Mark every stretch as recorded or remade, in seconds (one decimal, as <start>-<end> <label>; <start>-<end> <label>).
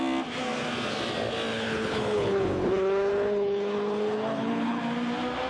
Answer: 0.0-1.5 recorded; 1.5-4.8 remade; 4.8-5.5 recorded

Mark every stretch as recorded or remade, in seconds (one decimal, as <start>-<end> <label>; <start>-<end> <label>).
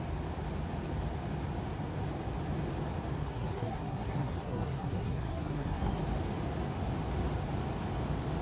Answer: 0.0-3.2 recorded; 3.2-6.0 remade; 6.0-8.4 recorded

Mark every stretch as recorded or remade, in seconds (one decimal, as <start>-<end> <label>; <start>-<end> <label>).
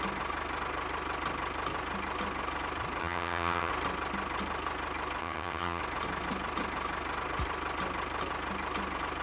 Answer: 0.0-3.0 recorded; 3.0-3.7 remade; 3.7-5.2 recorded; 5.2-5.8 remade; 5.8-9.2 recorded